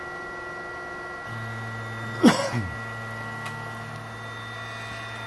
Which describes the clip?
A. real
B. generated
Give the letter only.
A